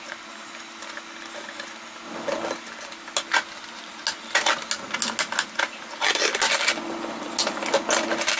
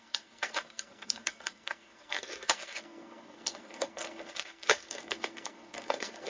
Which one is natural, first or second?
first